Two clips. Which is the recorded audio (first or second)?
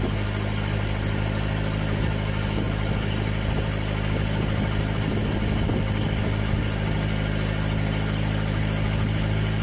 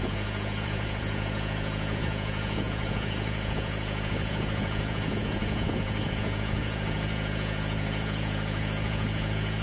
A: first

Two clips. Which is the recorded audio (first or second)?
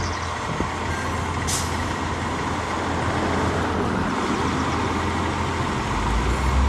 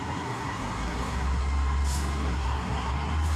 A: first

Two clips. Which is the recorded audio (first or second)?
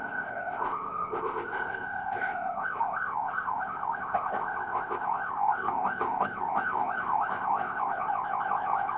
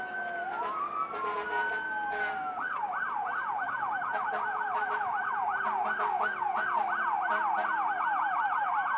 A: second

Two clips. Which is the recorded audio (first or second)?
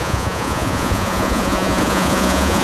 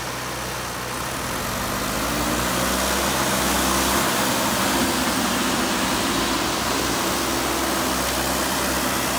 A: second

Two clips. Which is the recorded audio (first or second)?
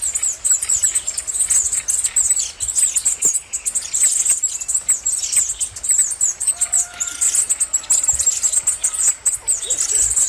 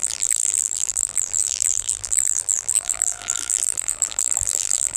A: first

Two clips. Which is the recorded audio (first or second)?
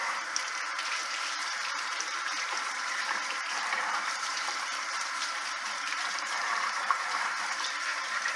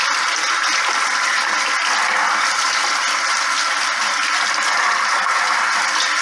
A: second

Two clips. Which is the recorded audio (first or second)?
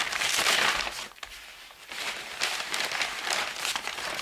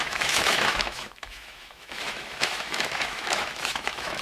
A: first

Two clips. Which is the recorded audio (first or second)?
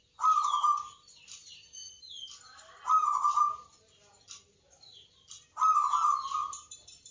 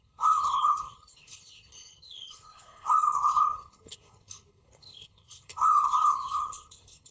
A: first